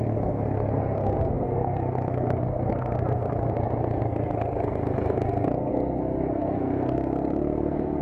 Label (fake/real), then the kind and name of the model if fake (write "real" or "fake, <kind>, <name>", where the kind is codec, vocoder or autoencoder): fake, codec, SNAC